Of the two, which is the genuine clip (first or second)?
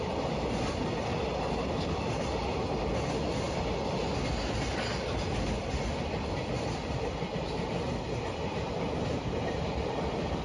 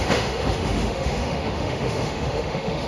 first